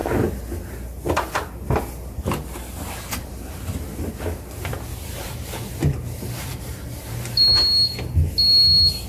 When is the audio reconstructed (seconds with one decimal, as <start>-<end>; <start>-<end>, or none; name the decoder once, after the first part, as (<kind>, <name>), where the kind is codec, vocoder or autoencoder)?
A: 4.9-7.5 (vocoder, BigVGAN v2)